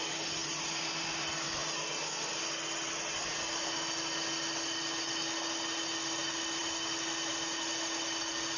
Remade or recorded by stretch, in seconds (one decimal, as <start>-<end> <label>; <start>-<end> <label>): 0.0-8.6 recorded